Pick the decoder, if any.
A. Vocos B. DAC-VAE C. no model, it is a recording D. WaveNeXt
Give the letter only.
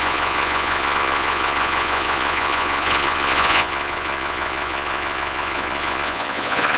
A